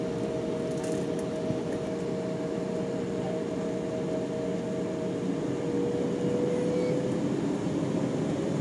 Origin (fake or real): real